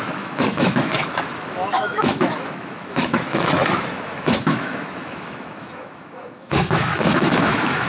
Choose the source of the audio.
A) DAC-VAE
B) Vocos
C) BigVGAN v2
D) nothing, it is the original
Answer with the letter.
A